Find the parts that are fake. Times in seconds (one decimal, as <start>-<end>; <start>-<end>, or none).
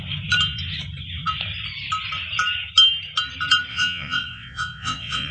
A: 3.7-5.3